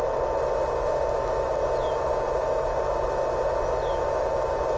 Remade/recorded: recorded